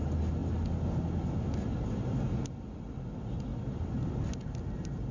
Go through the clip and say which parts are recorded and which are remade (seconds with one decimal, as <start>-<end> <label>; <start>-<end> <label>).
0.0-5.1 recorded